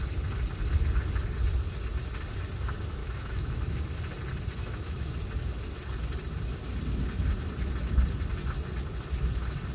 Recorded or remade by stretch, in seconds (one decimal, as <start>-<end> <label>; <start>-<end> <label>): 0.0-3.0 recorded; 3.0-3.8 remade; 3.8-4.6 recorded; 4.6-5.1 remade; 5.1-9.7 recorded